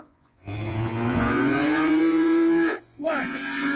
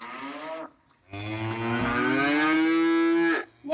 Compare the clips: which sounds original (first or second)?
second